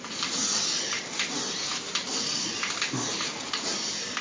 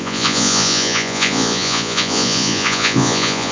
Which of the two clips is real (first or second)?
first